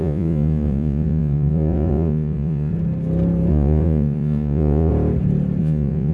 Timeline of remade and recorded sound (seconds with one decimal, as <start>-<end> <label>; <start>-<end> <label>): 0.0-2.7 remade; 2.7-3.5 recorded; 3.5-4.9 remade; 4.9-5.6 recorded; 5.6-6.1 remade